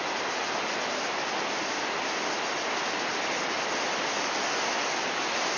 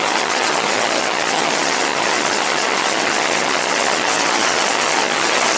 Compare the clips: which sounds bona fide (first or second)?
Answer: first